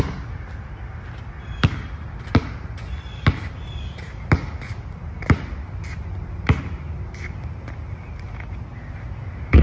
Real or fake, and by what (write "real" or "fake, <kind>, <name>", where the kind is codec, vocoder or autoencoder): real